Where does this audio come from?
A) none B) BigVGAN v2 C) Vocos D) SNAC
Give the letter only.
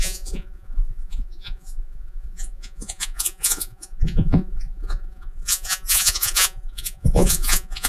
C